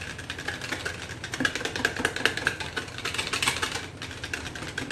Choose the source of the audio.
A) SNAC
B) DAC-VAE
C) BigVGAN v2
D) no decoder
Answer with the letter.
D